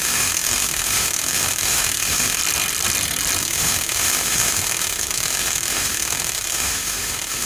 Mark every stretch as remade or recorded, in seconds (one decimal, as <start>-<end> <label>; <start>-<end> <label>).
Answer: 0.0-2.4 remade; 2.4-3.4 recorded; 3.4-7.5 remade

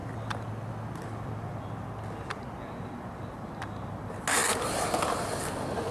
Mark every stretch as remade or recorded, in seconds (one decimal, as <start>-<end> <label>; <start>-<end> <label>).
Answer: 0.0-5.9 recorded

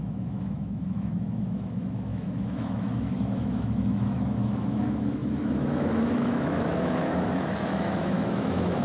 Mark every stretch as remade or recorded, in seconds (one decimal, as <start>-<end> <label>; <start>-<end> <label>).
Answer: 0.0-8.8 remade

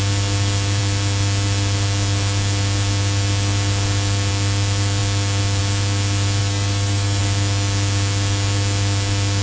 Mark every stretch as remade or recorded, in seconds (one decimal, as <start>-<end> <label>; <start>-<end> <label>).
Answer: 0.0-6.4 recorded; 6.4-7.2 remade; 7.2-9.4 recorded